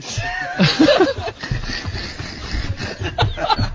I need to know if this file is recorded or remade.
recorded